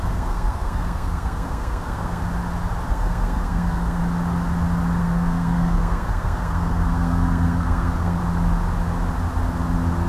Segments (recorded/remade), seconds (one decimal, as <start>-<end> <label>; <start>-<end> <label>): 0.0-2.2 remade; 2.2-2.9 recorded; 2.9-4.0 remade; 4.0-5.0 recorded; 5.0-8.2 remade; 8.2-10.1 recorded